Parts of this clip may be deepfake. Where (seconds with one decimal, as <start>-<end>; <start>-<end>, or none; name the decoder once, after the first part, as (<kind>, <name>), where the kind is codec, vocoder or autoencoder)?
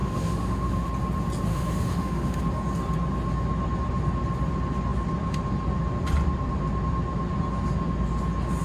0.0-0.9 (autoencoder, DAC-VAE); 1.5-2.4